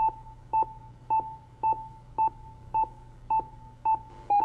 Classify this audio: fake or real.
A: fake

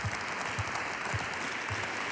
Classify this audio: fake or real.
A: real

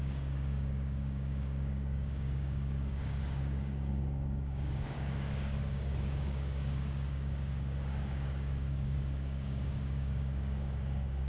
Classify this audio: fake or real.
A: fake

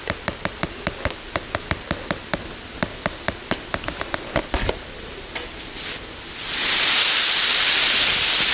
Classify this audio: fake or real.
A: real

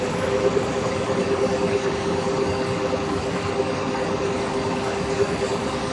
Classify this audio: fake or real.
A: fake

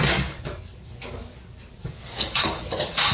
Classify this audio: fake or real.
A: fake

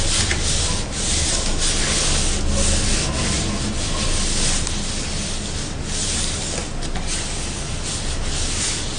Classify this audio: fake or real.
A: real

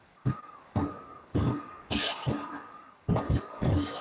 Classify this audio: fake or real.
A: fake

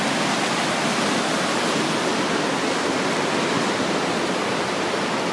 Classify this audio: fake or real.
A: real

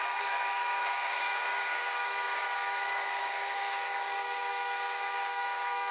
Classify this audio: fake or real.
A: fake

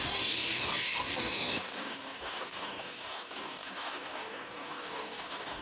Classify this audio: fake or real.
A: fake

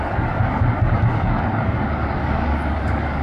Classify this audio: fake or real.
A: fake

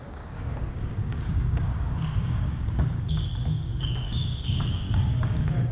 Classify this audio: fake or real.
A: fake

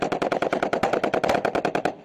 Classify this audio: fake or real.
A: real